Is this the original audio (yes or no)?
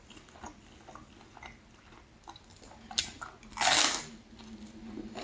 yes